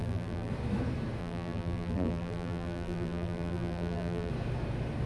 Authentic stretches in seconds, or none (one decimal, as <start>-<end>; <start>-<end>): 0.5-1.2; 4.3-5.1